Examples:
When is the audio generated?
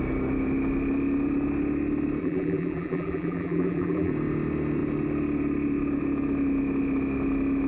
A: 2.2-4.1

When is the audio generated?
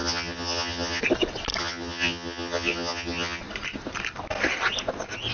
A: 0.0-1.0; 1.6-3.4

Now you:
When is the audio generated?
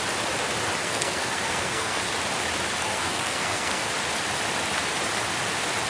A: 0.8-2.1; 2.8-3.9